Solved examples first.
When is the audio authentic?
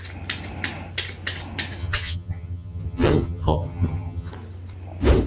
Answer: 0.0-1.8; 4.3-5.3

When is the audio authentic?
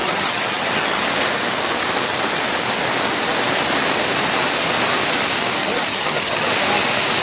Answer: 1.0-5.6; 6.5-7.2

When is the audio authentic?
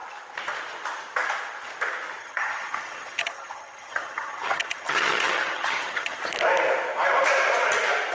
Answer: 0.0-2.2; 6.2-8.1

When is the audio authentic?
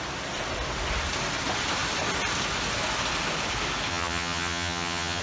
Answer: 0.0-3.9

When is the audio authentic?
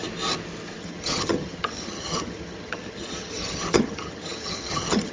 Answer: 0.0-0.8